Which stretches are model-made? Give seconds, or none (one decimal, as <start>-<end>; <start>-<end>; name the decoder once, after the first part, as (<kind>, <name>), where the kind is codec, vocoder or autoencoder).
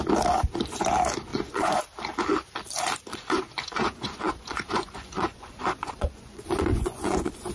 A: 1.3-1.8 (vocoder, Vocos); 3.1-7.5